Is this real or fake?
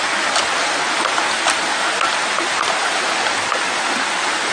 real